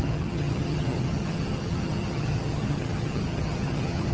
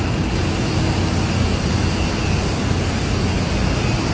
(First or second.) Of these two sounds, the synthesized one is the first